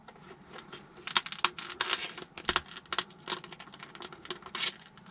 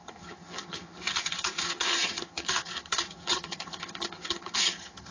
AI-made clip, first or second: second